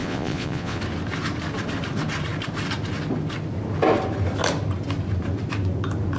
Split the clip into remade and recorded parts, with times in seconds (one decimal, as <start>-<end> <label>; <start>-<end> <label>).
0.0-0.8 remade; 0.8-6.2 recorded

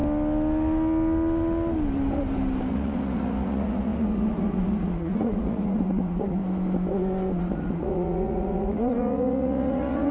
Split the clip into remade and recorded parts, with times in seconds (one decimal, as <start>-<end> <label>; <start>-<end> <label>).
0.0-2.7 recorded; 2.7-6.4 remade; 6.4-7.4 recorded; 7.4-10.1 remade

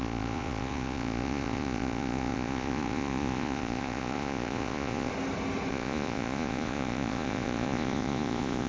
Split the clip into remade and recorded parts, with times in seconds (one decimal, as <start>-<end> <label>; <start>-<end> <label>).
0.0-5.1 remade; 5.1-5.7 recorded; 5.7-8.7 remade